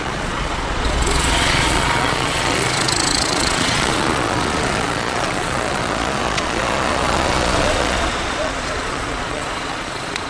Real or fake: fake